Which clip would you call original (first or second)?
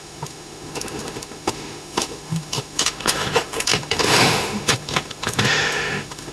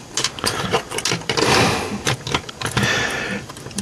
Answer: second